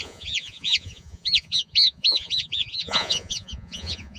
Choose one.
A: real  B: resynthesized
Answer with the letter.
B